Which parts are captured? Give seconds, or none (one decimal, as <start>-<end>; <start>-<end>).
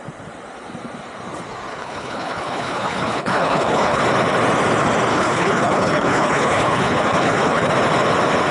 0.0-1.7; 4.0-5.1; 7.7-8.5